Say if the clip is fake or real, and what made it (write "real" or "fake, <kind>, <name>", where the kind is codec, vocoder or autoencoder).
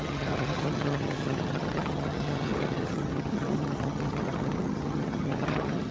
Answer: fake, vocoder, HiFi-GAN